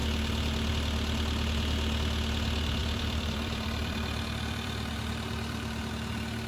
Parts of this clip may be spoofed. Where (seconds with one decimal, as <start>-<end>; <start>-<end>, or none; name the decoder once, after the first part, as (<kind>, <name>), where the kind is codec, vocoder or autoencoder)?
2.8-5.9 (vocoder, BigVGAN v2)